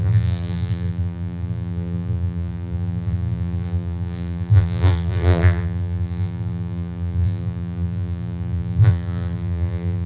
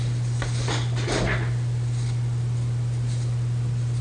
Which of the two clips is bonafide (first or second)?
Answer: second